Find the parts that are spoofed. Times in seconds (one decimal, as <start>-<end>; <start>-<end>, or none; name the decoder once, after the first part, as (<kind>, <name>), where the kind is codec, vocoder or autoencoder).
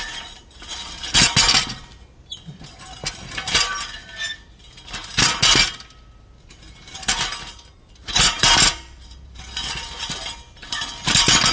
8.0-9.4 (vocoder, BigVGAN v2)